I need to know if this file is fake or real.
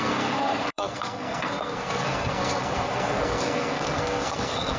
fake